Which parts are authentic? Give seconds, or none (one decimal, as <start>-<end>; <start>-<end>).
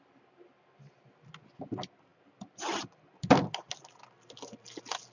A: 0.0-5.1